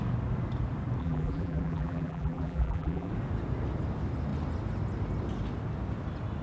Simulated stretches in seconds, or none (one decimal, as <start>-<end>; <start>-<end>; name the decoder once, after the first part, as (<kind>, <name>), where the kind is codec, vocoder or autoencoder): 1.0-3.1 (vocoder, BigVGAN v2)